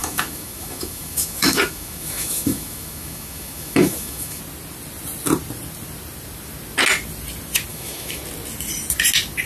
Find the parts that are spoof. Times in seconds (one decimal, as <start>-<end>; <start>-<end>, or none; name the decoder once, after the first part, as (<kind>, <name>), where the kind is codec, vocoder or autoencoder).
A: 0.0-4.4 (autoencoder, DAC-VAE); 7.7-8.2